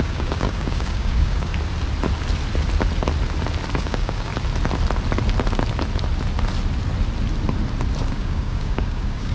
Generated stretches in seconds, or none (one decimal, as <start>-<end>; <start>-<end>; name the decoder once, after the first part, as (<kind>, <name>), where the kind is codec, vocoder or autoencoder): 0.0-1.5 (codec, DAC); 3.8-4.3; 8.1-9.3